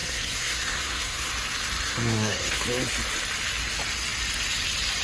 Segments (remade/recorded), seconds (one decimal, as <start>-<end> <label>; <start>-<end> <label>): 0.0-1.3 remade; 1.3-1.9 recorded; 1.9-2.6 remade; 2.6-5.0 recorded